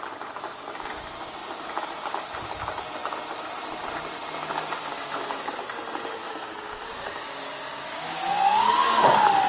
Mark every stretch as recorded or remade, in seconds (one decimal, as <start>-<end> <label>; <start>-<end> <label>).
0.0-6.2 recorded; 6.2-9.5 remade